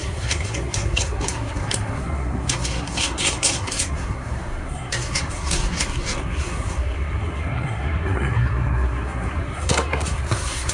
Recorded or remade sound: remade